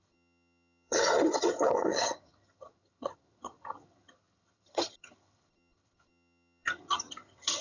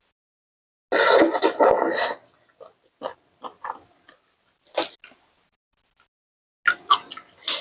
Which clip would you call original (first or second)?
second